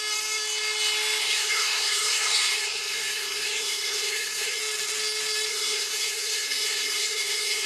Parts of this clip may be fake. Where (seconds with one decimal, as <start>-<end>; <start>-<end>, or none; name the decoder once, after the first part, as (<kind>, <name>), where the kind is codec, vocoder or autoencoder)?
1.2-4.6 (codec, SNAC); 5.5-7.7